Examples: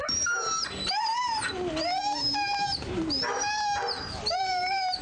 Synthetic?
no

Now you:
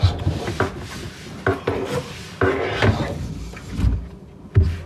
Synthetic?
no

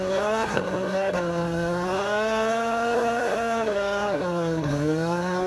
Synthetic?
yes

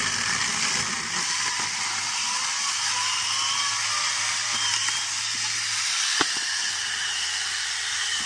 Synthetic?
no